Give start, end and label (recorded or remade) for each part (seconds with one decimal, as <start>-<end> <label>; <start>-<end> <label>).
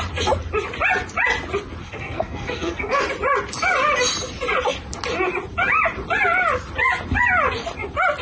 0.0-1.8 recorded; 1.8-3.0 remade; 3.0-8.2 recorded